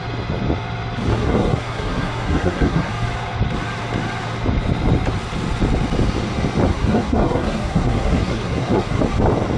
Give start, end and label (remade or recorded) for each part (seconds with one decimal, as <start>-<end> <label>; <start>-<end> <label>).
0.0-1.1 recorded; 1.1-2.9 remade; 2.9-6.7 recorded; 6.7-9.0 remade; 9.0-9.6 recorded